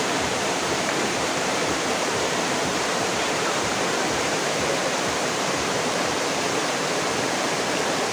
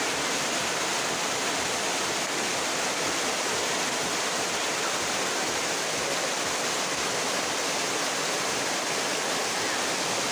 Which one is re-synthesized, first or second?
first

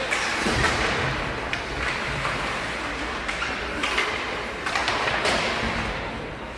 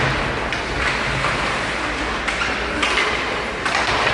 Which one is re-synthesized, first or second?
first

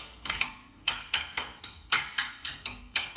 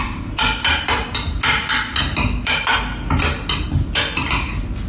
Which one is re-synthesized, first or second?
first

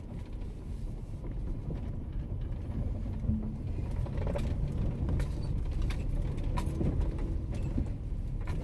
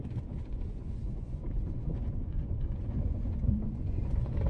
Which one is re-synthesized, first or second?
second